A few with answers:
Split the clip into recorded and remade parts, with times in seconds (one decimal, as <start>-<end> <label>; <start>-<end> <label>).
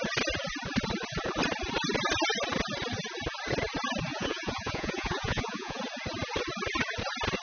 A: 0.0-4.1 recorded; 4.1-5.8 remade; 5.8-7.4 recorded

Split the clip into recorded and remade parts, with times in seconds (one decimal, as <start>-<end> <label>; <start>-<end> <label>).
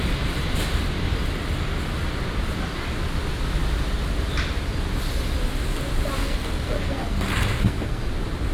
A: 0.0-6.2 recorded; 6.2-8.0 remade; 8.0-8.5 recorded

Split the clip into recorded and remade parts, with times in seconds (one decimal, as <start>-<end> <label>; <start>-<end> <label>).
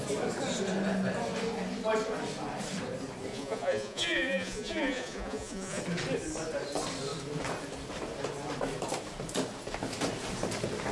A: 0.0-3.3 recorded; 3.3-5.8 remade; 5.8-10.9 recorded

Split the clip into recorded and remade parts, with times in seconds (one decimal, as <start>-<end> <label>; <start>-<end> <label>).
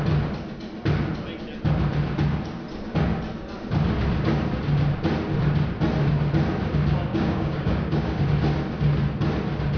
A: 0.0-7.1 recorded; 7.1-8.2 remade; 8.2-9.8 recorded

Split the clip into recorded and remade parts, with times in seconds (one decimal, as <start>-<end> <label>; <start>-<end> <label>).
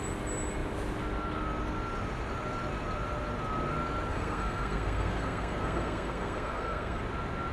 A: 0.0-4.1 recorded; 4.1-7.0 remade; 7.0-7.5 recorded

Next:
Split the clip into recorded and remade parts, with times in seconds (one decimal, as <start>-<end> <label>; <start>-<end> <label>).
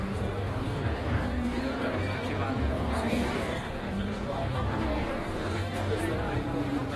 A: 0.0-0.4 recorded; 0.4-2.0 remade; 2.0-2.7 recorded; 2.7-6.0 remade; 6.0-7.0 recorded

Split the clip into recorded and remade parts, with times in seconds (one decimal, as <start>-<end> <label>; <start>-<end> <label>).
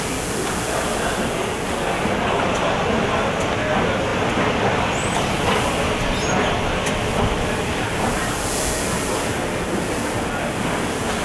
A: 0.0-11.2 recorded